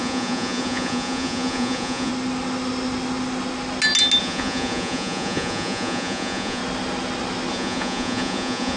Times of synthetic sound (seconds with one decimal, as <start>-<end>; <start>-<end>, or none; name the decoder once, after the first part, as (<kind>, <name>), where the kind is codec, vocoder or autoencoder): 0.0-2.1 (vocoder, Vocos); 4.2-6.6; 7.5-8.8